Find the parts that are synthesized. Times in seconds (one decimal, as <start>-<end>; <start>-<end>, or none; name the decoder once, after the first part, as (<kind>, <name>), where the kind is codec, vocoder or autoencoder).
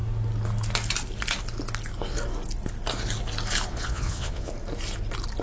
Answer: 3.7-4.5 (vocoder, Vocos)